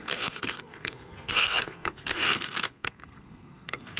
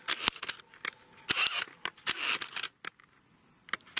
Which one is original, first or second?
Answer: second